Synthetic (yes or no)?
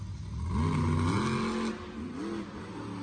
no